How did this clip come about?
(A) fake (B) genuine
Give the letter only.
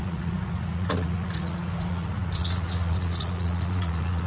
A